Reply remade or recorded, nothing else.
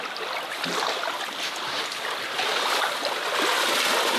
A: recorded